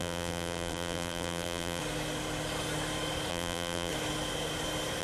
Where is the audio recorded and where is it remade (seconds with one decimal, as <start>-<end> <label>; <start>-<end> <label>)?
0.0-1.8 remade; 1.8-3.3 recorded; 3.3-3.9 remade; 3.9-5.0 recorded